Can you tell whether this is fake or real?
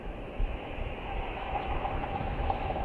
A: fake